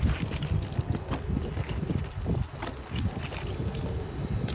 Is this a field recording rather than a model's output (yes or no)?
yes